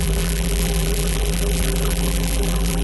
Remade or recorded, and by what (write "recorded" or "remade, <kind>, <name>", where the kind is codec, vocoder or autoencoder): remade, vocoder, BigVGAN v2